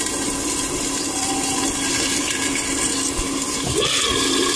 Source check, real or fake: real